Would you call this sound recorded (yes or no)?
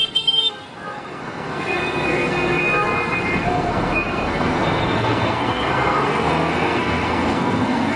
no